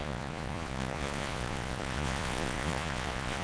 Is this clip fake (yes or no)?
yes